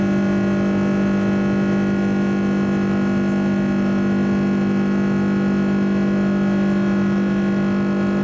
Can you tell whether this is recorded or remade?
recorded